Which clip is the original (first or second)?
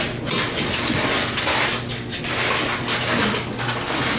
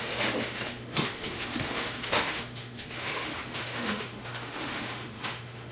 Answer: first